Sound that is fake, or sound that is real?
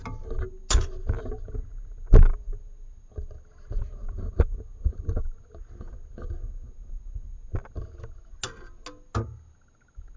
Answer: real